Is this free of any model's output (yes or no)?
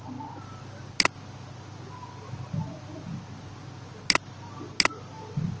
yes